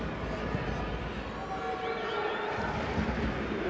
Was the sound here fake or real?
real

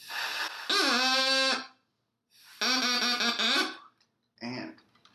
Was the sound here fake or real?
real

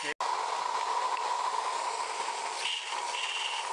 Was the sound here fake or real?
real